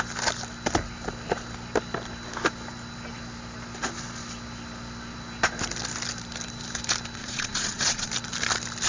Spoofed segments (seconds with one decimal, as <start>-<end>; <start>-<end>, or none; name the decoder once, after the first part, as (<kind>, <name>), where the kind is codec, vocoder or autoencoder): 7.2-8.1 (vocoder, Vocos)